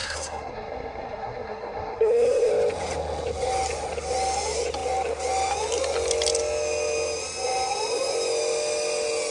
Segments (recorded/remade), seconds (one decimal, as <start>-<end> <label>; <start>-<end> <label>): 0.0-2.5 remade; 2.5-9.3 recorded